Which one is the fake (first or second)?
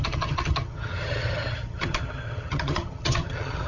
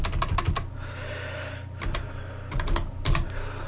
first